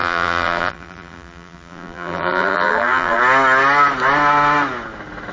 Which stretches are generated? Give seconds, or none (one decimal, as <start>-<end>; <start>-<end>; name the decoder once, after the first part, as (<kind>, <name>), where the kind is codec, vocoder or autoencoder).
0.0-3.2 (vocoder, BigVGAN v2)